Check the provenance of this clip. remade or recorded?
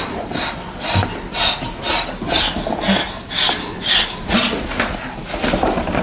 recorded